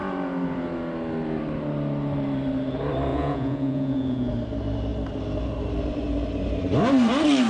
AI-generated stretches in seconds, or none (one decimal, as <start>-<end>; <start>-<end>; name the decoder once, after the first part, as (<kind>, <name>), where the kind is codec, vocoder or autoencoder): 3.1-4.3 (vocoder, Vocos)